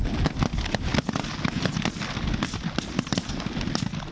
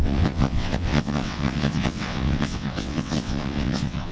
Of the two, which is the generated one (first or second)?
second